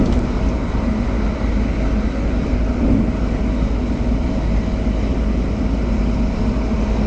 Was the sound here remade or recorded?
recorded